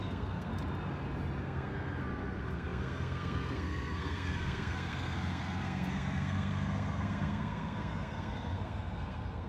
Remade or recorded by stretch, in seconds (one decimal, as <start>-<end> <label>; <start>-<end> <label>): 0.0-0.5 remade; 0.5-1.4 recorded; 1.4-9.5 remade